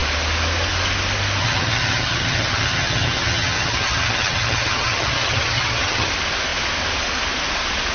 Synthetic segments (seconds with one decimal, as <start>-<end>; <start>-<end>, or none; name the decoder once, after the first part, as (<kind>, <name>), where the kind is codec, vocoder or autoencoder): 1.4-6.1 (vocoder, HiFi-GAN)